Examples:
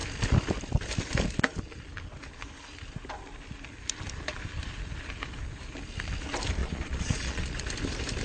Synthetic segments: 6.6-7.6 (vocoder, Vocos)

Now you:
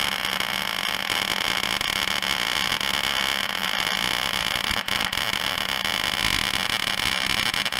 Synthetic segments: none

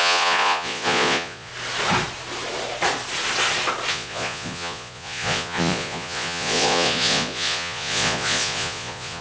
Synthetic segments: 0.0-1.5 (vocoder, Vocos); 3.9-9.2

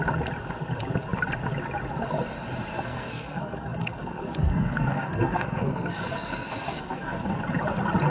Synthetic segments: 2.7-7.4 (codec, SNAC)

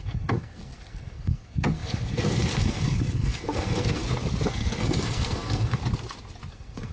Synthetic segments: 0.0-4.0 (codec, SNAC); 4.5-5.8; 6.5-6.9

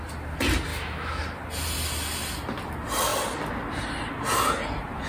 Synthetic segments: 0.7-1.2 (autoencoder, DAC-VAE)